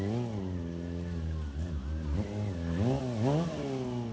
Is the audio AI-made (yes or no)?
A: no